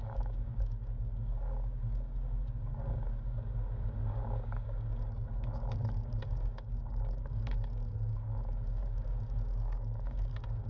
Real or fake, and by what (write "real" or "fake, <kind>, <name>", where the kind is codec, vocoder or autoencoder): fake, codec, DAC